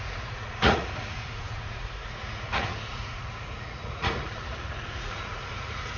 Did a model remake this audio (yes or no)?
yes